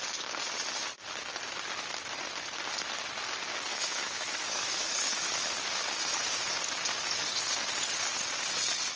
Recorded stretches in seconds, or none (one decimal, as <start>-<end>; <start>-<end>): 0.0-3.7; 5.3-9.0